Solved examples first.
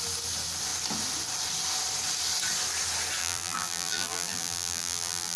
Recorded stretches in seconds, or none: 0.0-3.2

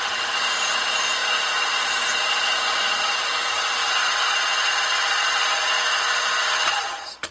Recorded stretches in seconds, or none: 3.8-6.4

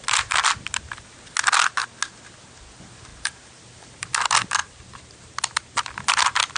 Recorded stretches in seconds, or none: 0.0-3.1; 3.9-6.6

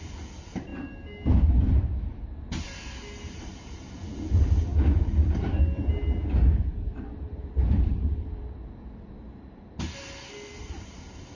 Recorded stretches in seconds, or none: 0.0-6.9; 8.4-10.6

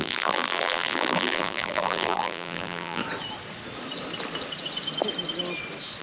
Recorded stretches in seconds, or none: 3.0-6.0